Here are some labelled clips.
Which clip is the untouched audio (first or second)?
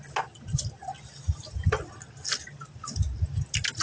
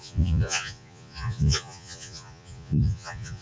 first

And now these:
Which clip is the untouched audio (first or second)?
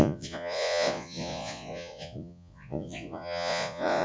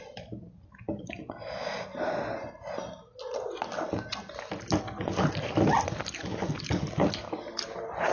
second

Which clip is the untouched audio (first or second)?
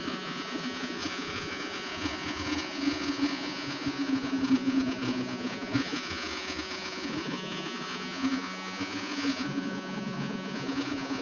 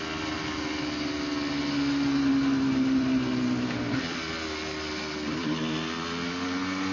second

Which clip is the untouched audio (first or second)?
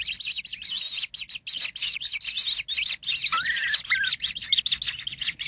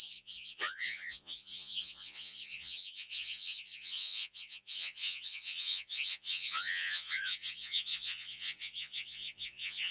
first